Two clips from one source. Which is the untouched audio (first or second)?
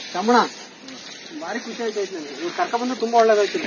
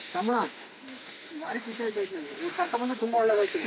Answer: first